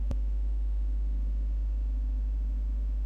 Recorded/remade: remade